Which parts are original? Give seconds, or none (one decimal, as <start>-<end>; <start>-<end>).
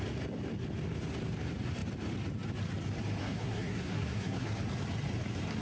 0.0-3.2; 4.5-5.6